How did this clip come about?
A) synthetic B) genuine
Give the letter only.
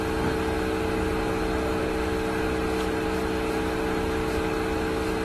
B